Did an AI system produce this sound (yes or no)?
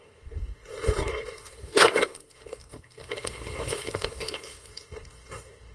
yes